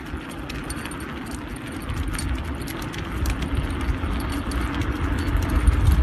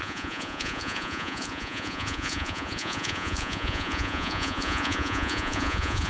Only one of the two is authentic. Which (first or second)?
first